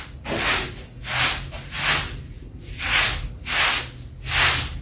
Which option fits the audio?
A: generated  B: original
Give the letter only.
B